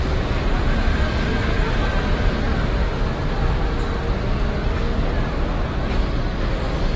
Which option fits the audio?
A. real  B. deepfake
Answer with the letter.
A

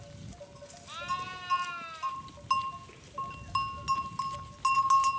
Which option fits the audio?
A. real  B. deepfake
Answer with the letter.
A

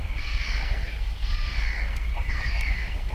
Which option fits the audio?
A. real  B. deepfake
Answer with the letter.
B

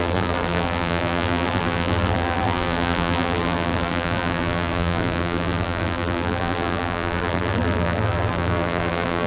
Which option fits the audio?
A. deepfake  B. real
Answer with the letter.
A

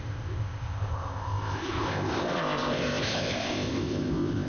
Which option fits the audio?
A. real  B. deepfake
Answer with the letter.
B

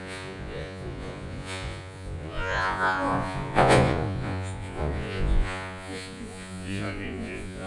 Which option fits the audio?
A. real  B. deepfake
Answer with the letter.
B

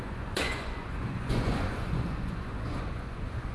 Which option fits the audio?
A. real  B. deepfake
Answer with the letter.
B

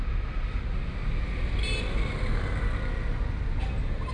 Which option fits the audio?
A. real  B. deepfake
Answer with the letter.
A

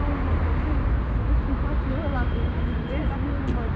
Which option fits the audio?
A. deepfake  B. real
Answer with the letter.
B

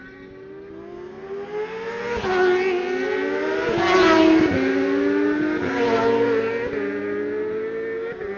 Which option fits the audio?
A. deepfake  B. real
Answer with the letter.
B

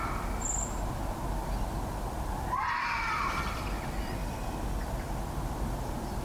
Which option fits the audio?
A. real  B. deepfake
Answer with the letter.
A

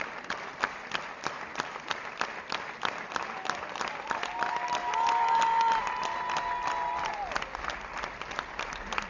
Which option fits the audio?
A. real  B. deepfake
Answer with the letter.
A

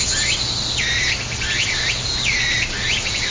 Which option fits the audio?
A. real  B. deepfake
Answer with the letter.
A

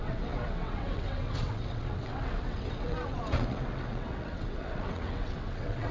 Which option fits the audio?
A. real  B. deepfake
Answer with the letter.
B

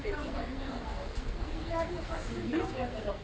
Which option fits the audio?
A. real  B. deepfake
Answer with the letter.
B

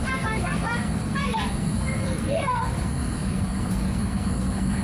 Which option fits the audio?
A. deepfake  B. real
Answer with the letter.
A